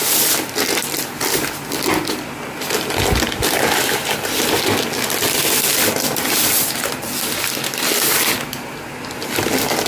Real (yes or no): yes